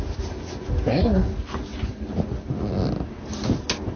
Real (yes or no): yes